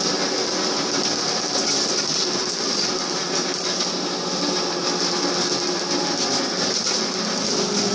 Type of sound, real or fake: real